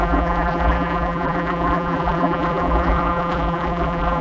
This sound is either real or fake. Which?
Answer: fake